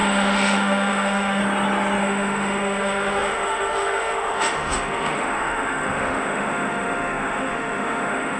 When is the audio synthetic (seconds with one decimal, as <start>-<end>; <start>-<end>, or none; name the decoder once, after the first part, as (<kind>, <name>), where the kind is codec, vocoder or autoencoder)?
0.0-1.4 (autoencoder, DAC-VAE); 2.0-8.4